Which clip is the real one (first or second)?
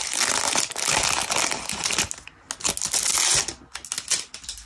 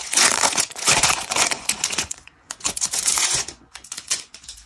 first